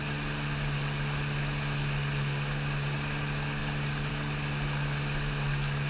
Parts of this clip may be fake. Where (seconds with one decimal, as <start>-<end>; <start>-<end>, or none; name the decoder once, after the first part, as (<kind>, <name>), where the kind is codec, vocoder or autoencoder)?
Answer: none